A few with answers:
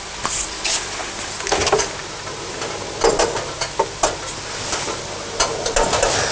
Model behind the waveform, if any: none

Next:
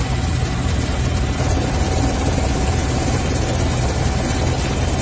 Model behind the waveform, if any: none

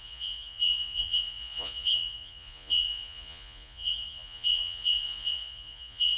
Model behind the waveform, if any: vocoder, Vocos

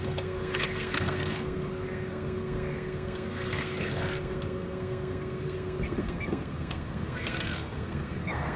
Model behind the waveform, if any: codec, SNAC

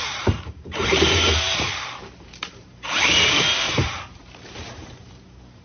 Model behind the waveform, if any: vocoder, BigVGAN v2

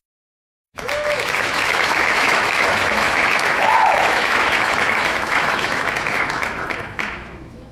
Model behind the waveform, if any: autoencoder, DAC-VAE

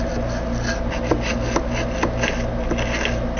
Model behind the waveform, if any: none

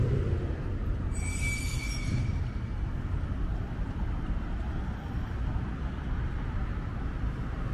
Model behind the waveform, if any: vocoder, BigVGAN v2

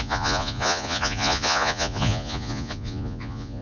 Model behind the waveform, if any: vocoder, Vocos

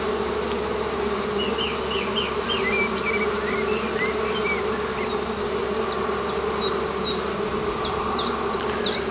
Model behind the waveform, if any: none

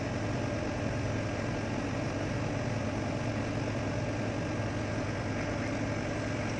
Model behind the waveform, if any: none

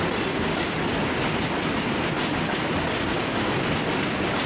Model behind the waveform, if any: none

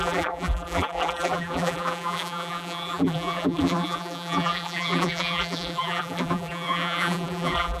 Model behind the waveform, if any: vocoder, BigVGAN v2